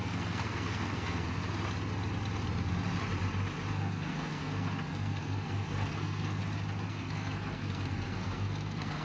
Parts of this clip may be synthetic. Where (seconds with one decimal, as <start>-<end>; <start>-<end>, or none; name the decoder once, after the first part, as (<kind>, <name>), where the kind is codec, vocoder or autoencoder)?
0.0-1.4 (codec, SNAC); 3.7-6.4; 6.9-9.0